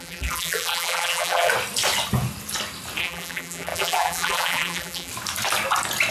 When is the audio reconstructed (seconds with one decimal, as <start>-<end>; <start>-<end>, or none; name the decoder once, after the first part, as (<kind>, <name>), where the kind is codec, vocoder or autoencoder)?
0.0-1.5 (vocoder, BigVGAN v2); 3.0-5.1